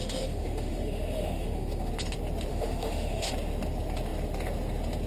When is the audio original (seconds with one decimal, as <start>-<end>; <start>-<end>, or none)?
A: 1.9-2.5; 3.3-5.1